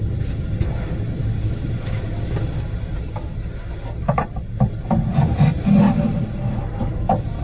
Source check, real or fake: real